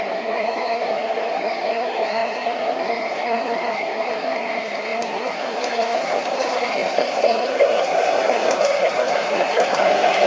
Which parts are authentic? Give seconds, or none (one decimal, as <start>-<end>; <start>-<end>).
none